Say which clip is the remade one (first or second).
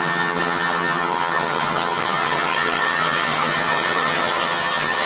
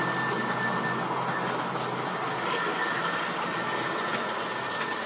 first